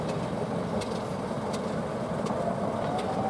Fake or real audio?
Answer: real